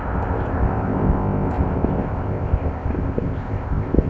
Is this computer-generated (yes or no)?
yes